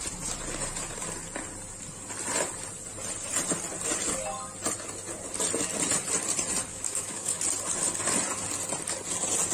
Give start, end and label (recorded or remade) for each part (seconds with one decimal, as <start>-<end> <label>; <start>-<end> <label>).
0.0-6.7 recorded; 6.7-7.4 remade; 7.4-9.5 recorded